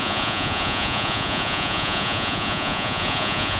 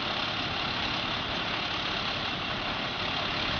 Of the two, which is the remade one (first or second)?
first